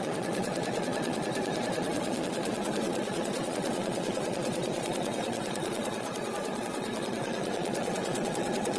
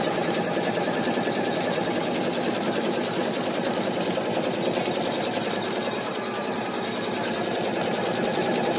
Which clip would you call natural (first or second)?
second